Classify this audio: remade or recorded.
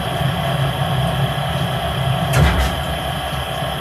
recorded